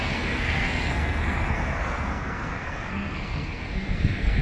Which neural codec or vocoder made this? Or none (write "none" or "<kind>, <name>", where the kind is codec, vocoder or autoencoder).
codec, SNAC